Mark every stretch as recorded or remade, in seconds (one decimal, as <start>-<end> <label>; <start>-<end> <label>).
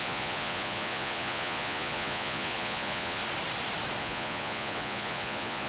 0.0-3.2 remade; 3.2-4.0 recorded; 4.0-5.7 remade